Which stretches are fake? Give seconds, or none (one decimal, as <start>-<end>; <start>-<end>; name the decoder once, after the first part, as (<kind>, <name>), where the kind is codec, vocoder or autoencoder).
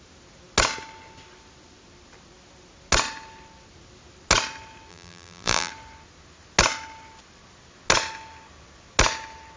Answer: 4.9-5.7 (vocoder, BigVGAN v2)